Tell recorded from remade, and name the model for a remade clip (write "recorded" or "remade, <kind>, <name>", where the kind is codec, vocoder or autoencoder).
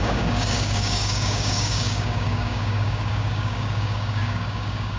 remade, codec, DAC